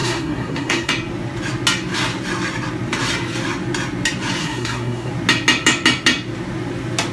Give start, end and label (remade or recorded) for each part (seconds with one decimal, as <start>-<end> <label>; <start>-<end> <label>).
0.0-0.9 remade; 0.9-4.4 recorded; 4.4-5.1 remade; 5.1-7.1 recorded